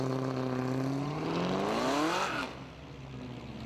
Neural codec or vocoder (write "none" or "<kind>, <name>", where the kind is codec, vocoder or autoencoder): none